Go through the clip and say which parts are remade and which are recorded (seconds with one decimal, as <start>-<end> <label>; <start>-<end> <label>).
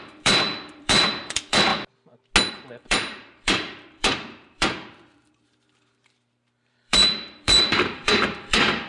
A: 0.0-1.7 remade; 1.7-2.5 recorded; 2.5-8.9 remade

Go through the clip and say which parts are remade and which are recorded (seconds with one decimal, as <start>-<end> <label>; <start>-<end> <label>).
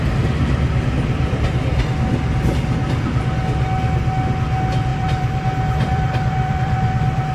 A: 0.0-4.9 recorded; 4.9-7.3 remade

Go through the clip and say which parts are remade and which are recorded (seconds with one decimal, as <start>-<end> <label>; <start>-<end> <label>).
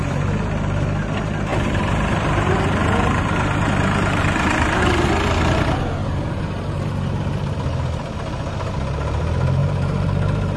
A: 0.0-1.5 recorded; 1.5-4.8 remade; 4.8-6.0 recorded; 6.0-7.2 remade; 7.2-9.6 recorded; 9.6-10.6 remade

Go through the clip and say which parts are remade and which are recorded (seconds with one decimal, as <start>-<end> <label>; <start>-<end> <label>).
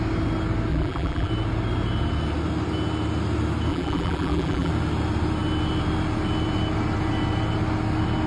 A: 0.0-0.7 recorded; 0.7-1.3 remade; 1.3-3.7 recorded; 3.7-4.7 remade; 4.7-8.3 recorded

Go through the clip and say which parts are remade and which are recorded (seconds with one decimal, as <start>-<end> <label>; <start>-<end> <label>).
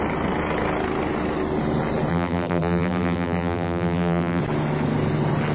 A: 0.0-2.1 recorded; 2.1-4.4 remade; 4.4-5.5 recorded